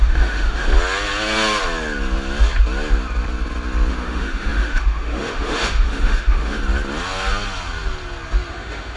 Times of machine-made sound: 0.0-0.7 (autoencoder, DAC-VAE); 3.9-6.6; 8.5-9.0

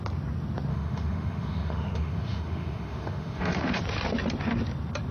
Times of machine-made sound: 0.7-3.8 (autoencoder, DAC-VAE)

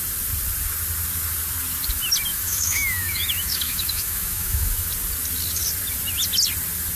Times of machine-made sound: 2.3-4.9 (autoencoder, DAC-VAE)

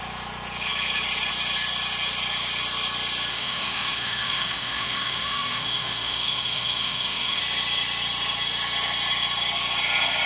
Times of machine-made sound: 3.3-7.4 (autoencoder, DAC-VAE)

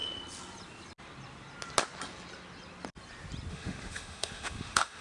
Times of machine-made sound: 3.5-5.0 (autoencoder, DAC-VAE)